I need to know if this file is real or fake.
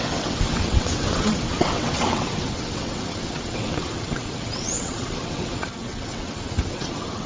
fake